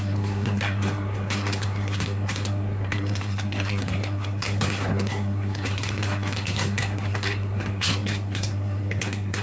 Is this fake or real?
fake